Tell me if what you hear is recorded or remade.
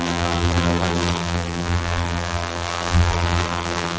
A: remade